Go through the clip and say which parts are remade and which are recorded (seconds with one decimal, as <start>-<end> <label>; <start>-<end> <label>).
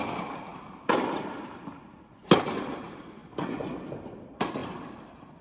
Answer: 0.0-0.5 remade; 0.5-1.0 recorded; 1.0-2.2 remade; 2.2-2.7 recorded; 2.7-3.2 remade; 3.2-3.9 recorded; 3.9-5.4 remade